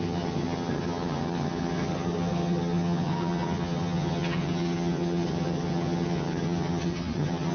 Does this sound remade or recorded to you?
remade